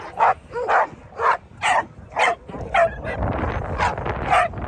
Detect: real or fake real